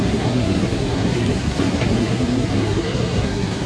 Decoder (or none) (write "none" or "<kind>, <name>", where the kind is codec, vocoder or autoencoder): codec, SNAC